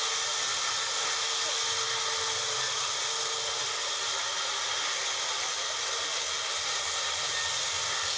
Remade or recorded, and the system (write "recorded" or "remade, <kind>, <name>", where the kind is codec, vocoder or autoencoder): recorded